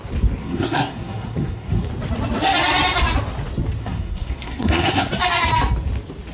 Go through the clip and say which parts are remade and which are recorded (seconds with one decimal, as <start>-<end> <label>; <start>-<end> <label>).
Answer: 0.0-0.4 recorded; 0.4-1.9 remade; 1.9-3.8 recorded; 3.8-5.1 remade; 5.1-6.3 recorded